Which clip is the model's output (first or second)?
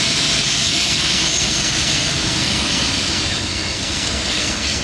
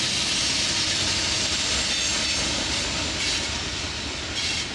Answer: first